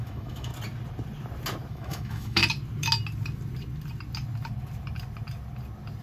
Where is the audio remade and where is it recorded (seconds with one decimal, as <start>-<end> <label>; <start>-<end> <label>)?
0.0-0.5 remade; 0.5-1.7 recorded; 1.7-2.4 remade; 2.4-6.0 recorded